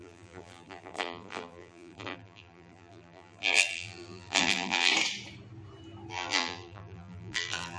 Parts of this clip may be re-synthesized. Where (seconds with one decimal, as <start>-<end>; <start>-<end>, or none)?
0.0-4.9; 6.1-7.8